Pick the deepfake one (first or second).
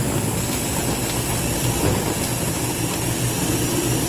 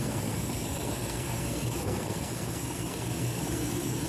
second